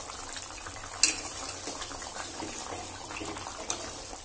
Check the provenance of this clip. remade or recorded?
recorded